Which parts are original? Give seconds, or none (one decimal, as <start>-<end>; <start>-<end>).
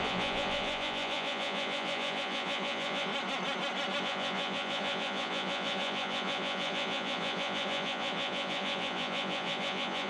3.1-4.0